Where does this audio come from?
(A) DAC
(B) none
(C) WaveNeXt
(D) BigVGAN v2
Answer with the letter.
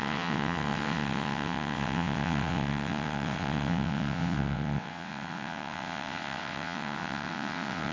C